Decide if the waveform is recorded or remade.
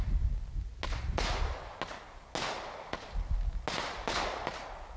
recorded